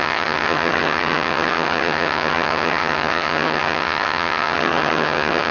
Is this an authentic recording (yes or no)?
no